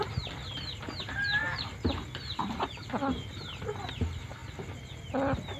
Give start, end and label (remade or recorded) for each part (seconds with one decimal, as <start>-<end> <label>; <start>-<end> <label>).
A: 0.0-2.4 recorded; 2.4-3.4 remade; 3.4-5.6 recorded